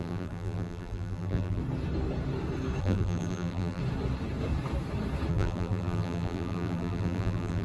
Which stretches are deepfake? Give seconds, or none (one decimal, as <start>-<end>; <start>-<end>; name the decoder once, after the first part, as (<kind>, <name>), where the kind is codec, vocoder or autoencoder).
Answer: 0.0-1.6 (vocoder, BigVGAN v2); 2.8-3.8; 5.3-7.6